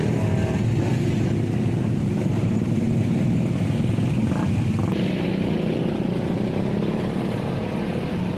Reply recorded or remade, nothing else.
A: recorded